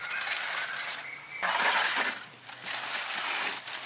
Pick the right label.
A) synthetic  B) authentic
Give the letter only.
B